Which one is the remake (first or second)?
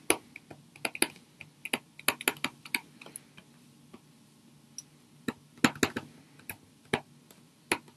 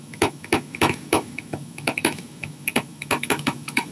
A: second